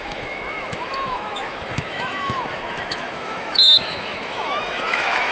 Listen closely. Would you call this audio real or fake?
fake